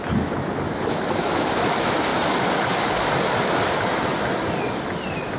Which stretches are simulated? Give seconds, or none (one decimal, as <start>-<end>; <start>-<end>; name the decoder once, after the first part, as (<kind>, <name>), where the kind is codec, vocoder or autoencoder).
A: 0.0-2.1 (autoencoder, DAC-VAE)

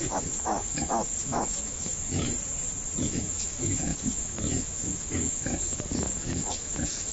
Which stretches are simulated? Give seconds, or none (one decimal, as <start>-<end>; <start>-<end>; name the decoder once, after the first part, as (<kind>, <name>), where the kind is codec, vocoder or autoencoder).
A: 0.0-2.3 (autoencoder, DAC-VAE); 3.0-7.1

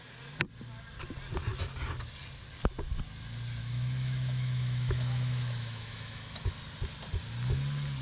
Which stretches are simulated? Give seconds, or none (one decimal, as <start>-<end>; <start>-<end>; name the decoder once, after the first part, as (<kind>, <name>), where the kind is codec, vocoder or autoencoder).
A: 3.6-6.5 (autoencoder, DAC-VAE)

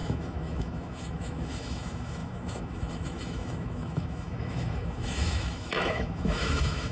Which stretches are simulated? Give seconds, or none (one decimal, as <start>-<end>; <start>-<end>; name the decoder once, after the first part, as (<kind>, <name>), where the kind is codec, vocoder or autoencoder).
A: 0.0-6.9 (autoencoder, DAC-VAE)

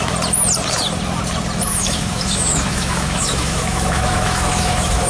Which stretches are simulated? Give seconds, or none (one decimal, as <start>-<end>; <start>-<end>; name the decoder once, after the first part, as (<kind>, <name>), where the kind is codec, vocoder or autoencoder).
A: 1.7-5.1 (autoencoder, DAC-VAE)

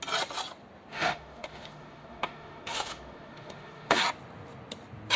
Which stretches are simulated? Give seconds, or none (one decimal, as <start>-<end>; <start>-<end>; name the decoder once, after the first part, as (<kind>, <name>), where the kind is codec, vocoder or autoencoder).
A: 0.9-4.0 (autoencoder, DAC-VAE)

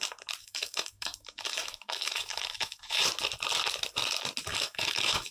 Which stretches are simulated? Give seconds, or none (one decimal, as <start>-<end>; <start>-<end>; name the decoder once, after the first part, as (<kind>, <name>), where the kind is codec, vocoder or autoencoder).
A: 0.4-3.0 (autoencoder, DAC-VAE); 4.5-5.3

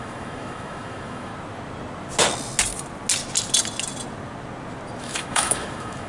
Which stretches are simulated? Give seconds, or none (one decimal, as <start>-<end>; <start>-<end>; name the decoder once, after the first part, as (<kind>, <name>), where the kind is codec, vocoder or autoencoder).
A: 0.0-1.3 (autoencoder, DAC-VAE); 5.0-6.1